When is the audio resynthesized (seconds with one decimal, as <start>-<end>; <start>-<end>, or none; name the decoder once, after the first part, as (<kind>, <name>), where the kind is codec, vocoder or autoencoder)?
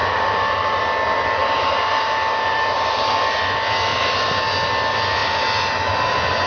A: 0.0-0.8 (vocoder, BigVGAN v2); 1.4-3.2